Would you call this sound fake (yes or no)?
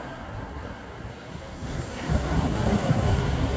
yes